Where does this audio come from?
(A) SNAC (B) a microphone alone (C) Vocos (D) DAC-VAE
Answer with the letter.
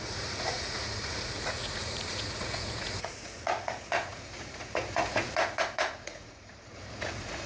C